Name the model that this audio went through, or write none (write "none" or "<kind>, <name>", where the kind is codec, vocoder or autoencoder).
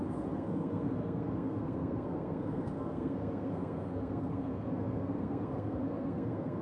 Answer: codec, SNAC